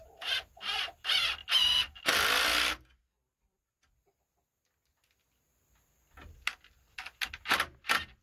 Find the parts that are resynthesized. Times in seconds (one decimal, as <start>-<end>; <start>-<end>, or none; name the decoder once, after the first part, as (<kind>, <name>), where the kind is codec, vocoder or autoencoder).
none

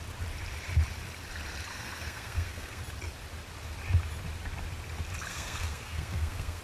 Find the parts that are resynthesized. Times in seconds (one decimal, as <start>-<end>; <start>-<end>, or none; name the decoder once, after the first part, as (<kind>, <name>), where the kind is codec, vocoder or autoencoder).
1.7-2.8 (codec, SNAC); 5.3-6.6